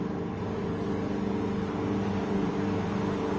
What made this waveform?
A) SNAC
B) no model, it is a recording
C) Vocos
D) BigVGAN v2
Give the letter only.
B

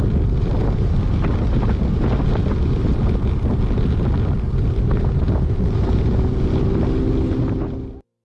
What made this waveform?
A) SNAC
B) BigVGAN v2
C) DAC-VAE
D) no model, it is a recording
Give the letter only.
D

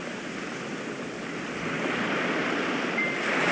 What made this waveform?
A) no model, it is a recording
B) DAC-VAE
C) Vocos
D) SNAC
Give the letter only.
A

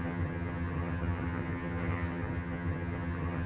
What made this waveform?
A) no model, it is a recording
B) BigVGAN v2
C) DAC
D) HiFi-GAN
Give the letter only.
D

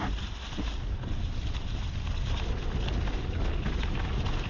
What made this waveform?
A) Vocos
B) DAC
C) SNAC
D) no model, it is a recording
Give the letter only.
D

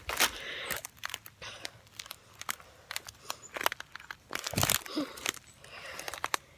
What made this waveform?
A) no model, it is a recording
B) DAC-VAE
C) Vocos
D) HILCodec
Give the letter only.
A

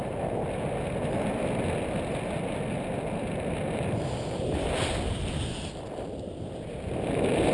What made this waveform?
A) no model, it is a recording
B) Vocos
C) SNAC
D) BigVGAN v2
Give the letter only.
A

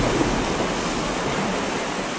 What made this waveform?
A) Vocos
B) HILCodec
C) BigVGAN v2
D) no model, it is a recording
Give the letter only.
D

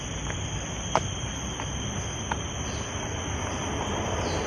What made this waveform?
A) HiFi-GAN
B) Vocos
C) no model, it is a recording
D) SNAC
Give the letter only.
C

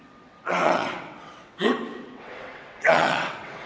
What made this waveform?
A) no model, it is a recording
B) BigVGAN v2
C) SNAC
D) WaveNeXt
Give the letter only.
D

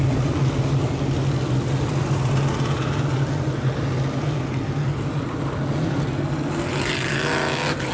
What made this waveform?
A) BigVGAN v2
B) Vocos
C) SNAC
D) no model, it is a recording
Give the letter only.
D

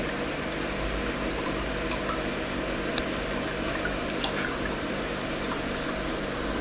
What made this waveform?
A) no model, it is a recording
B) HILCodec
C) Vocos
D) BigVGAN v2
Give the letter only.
A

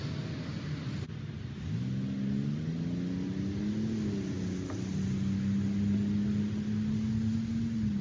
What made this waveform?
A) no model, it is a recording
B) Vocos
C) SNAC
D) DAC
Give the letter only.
A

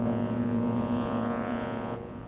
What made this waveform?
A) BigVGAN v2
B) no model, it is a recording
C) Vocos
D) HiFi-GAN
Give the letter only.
C